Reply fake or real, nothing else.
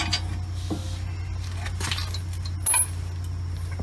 real